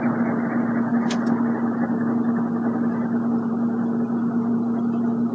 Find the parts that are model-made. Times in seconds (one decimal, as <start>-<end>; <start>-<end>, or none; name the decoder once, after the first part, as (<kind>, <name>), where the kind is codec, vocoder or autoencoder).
none